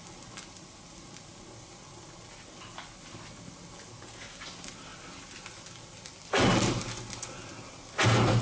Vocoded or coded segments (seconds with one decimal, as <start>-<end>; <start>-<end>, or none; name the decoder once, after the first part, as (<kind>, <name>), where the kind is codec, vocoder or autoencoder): none